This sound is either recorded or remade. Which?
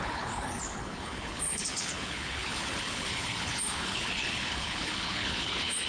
remade